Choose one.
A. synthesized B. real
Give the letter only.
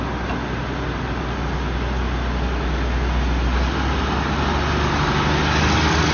B